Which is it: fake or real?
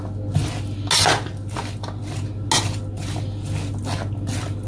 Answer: real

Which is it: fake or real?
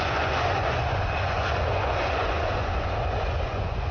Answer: fake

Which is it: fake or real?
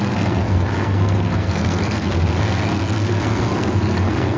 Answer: fake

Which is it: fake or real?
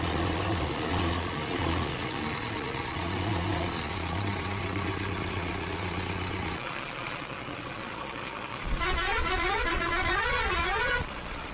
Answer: fake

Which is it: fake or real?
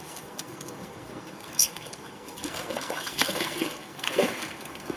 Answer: fake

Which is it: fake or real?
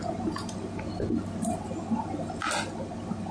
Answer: real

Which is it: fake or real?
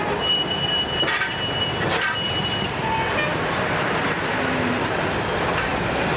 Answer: real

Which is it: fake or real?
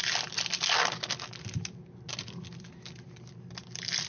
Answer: real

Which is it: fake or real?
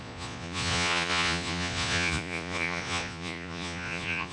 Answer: fake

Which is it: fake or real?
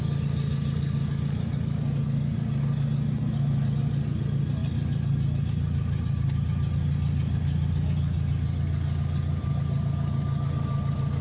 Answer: real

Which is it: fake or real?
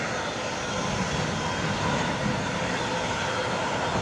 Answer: real